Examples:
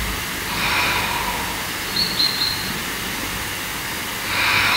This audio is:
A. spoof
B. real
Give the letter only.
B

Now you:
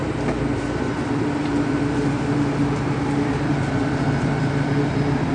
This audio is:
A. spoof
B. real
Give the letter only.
A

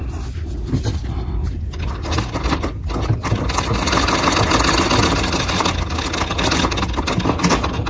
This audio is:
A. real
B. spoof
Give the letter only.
A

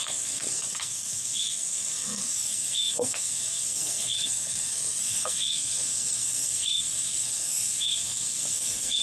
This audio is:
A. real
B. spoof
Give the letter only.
B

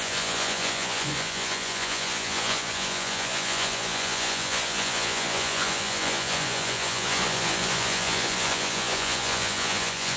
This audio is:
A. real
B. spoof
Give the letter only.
B